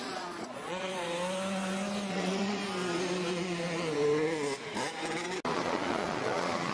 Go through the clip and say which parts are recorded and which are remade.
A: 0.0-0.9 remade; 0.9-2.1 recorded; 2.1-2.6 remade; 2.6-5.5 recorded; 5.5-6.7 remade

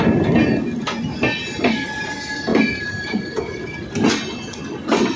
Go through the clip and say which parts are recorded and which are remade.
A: 0.0-2.5 recorded; 2.5-3.2 remade; 3.2-5.2 recorded